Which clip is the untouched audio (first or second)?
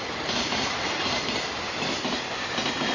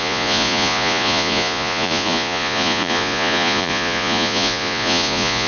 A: first